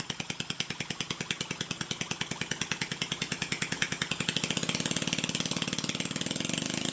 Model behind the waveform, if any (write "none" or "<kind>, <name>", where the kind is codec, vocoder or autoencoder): none